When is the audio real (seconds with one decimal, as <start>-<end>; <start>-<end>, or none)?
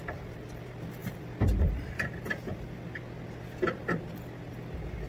0.0-1.0; 2.2-5.1